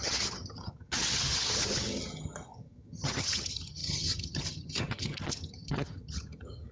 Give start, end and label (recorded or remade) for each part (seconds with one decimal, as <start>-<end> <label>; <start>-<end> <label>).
0.0-6.7 remade